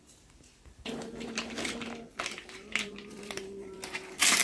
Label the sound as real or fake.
fake